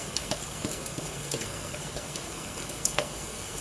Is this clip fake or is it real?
fake